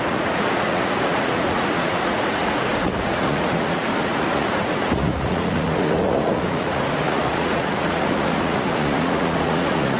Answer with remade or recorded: remade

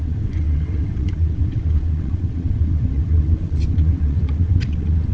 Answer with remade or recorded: remade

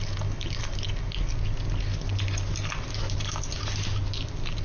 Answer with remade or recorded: recorded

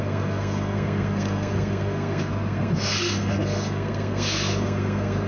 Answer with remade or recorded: remade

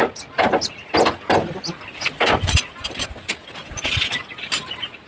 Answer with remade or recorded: recorded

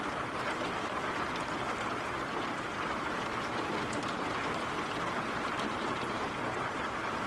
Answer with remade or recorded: recorded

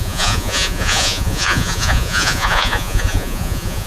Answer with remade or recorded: remade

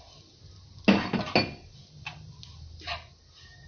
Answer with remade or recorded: recorded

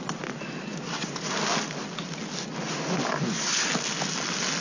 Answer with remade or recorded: recorded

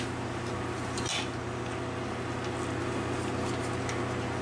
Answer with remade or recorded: recorded